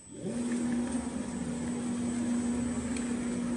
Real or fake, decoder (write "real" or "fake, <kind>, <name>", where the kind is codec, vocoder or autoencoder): real